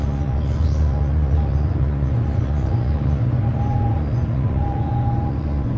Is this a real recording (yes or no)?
no